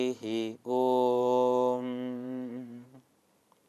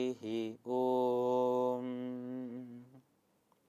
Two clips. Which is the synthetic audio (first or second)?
first